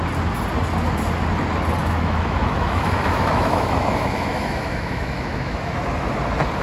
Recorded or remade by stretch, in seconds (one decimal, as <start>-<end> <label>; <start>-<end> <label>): 0.0-1.8 recorded; 1.8-5.8 remade; 5.8-6.6 recorded